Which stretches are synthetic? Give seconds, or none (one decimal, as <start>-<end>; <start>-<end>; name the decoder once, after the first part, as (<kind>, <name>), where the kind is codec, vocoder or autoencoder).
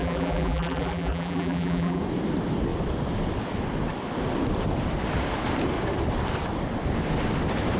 0.0-2.0 (vocoder, BigVGAN v2)